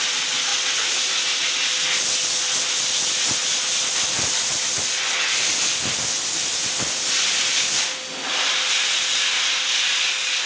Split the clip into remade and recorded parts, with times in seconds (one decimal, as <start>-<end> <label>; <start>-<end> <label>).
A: 0.0-10.5 recorded